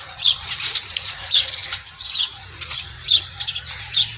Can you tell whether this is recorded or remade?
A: remade